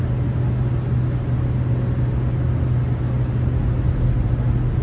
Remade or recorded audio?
recorded